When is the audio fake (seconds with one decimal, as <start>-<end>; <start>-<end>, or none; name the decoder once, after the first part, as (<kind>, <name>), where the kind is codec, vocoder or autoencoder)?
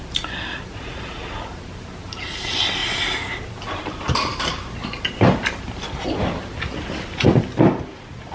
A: none